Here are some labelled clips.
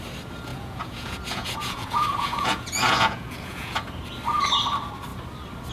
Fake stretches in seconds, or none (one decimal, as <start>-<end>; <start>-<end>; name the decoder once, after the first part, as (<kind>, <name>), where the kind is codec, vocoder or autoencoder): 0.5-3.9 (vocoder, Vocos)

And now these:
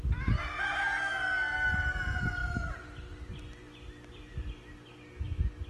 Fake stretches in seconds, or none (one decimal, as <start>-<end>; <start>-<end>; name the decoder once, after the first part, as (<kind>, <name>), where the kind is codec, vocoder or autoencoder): none

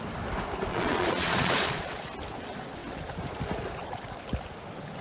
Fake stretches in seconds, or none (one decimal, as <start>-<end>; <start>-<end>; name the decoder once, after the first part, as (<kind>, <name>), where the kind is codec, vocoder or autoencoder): 0.7-2.0 (vocoder, Vocos)

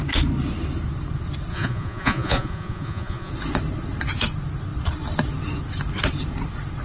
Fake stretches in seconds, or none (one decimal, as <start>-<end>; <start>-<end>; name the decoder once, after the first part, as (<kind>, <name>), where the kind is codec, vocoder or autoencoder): 1.5-3.3 (vocoder, Vocos)

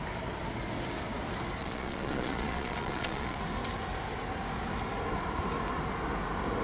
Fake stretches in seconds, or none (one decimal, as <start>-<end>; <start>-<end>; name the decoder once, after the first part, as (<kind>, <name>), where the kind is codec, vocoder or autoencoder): 1.6-3.4 (vocoder, Vocos)

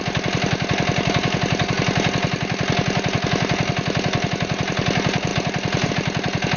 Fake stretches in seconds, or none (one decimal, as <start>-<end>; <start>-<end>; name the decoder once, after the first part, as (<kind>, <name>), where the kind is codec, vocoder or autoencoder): none